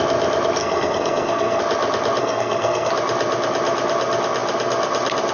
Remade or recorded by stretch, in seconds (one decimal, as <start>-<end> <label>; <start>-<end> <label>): 0.0-0.6 recorded; 0.6-1.6 remade; 1.6-2.2 recorded; 2.2-2.9 remade; 2.9-5.3 recorded